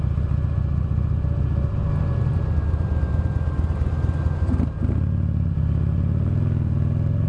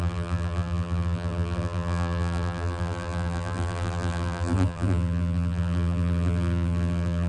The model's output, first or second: second